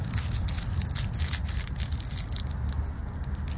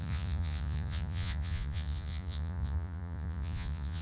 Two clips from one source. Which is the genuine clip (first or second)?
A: first